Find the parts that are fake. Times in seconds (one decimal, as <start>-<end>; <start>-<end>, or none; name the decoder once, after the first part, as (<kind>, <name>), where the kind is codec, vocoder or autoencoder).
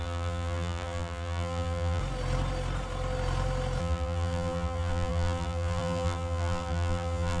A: 0.0-2.0 (vocoder, BigVGAN v2); 3.8-7.4